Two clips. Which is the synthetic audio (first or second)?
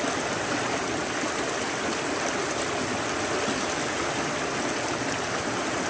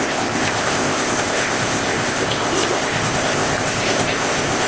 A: second